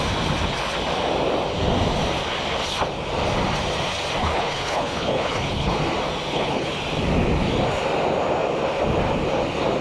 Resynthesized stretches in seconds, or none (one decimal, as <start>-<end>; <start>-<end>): 4.2-5.8; 6.3-6.8